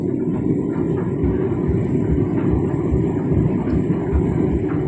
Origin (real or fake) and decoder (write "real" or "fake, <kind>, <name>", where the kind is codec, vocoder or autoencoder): real